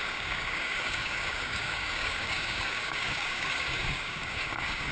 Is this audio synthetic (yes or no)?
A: yes